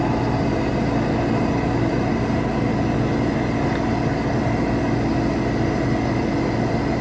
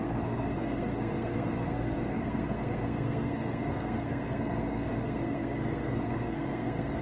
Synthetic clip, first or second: second